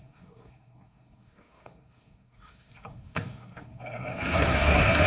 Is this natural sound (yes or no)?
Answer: no